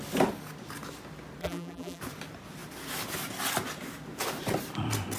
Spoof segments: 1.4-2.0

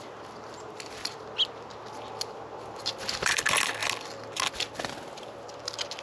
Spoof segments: none

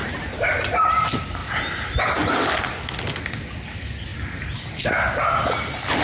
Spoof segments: 0.0-0.9

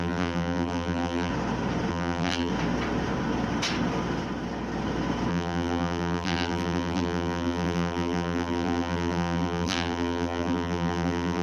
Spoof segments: 0.0-1.3; 1.9-2.5; 5.3-11.4